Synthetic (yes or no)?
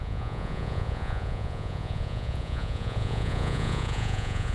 yes